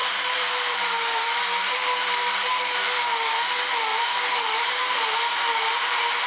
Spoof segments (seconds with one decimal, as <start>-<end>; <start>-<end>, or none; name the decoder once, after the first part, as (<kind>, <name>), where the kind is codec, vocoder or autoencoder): 0.0-3.5 (vocoder, BigVGAN v2); 3.9-6.3